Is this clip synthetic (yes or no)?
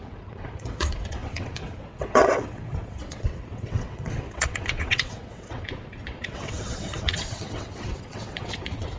yes